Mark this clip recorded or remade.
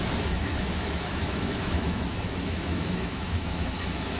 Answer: remade